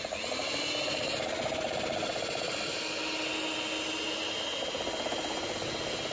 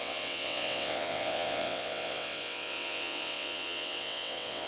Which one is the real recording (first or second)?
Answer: first